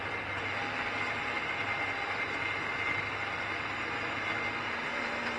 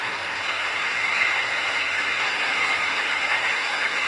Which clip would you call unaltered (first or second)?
first